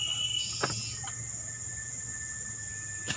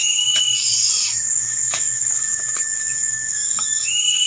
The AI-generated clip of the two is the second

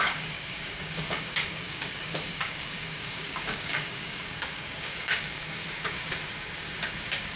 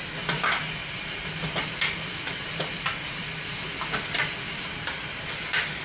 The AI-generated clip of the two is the first